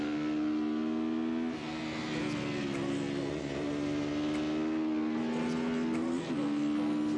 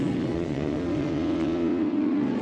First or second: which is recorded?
first